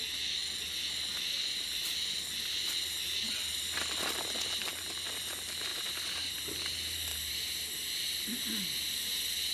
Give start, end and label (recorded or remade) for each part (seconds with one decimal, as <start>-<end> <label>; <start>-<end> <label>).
0.0-3.5 recorded; 3.5-4.9 remade; 4.9-5.7 recorded; 5.7-6.3 remade; 6.3-7.1 recorded; 7.1-7.7 remade; 7.7-9.5 recorded